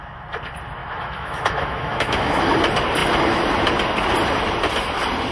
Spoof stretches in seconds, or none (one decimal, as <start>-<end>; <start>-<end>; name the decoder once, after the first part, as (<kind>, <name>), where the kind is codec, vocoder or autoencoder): 0.8-2.4 (autoencoder, DAC-VAE)